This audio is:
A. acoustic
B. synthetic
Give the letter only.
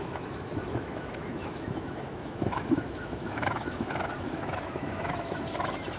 B